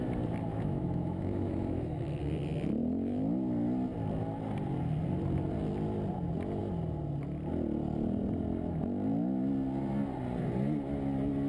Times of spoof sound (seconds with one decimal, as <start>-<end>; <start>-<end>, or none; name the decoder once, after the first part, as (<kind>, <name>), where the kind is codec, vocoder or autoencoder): 0.5-2.2 (autoencoder, DAC-VAE)

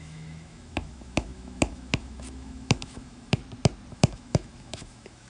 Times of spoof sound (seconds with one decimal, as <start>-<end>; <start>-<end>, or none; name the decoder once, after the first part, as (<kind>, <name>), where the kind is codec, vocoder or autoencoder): 0.0-3.4 (autoencoder, DAC-VAE); 3.9-5.3

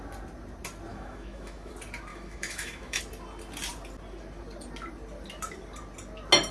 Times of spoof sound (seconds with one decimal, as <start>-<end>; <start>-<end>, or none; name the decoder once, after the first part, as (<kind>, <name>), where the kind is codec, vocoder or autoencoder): 0.9-1.7 (autoencoder, DAC-VAE); 2.1-3.0

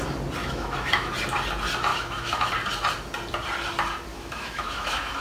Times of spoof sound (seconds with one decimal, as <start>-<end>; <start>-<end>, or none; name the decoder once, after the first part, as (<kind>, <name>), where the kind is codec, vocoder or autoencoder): 0.4-1.1 (autoencoder, DAC-VAE); 1.9-2.5; 4.1-5.2

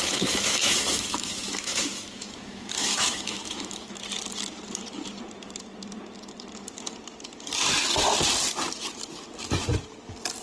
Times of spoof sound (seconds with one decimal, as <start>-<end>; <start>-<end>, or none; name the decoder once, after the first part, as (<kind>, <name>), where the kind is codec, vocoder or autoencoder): 0.0-3.9 (autoencoder, DAC-VAE)

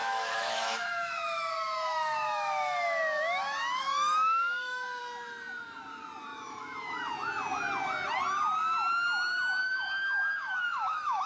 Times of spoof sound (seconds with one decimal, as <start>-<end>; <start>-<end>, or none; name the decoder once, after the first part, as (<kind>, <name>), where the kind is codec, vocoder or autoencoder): 0.0-5.0 (autoencoder, DAC-VAE); 6.3-7.0; 9.6-11.3

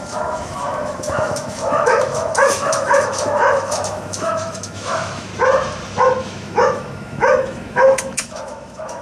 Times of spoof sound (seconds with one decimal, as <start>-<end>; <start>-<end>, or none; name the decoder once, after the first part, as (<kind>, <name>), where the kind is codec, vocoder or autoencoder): 0.0-5.3 (autoencoder, DAC-VAE); 6.2-9.0